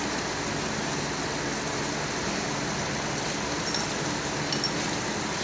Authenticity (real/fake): real